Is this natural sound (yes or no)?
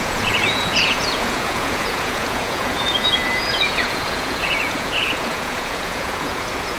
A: no